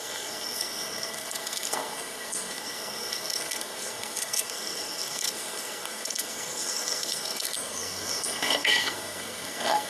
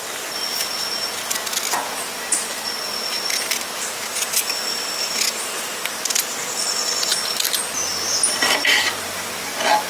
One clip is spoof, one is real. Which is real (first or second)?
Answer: second